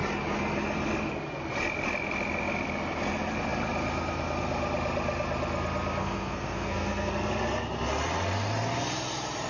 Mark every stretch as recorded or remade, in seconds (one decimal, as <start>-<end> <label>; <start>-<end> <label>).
0.0-6.0 recorded; 6.0-7.1 remade; 7.1-9.5 recorded